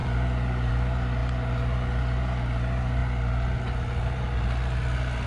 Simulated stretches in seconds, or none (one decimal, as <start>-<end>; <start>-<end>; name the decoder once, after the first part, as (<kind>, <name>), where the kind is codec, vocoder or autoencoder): 0.0-0.7 (vocoder, BigVGAN v2)